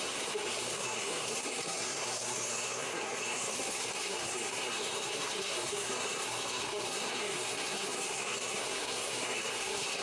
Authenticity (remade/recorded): remade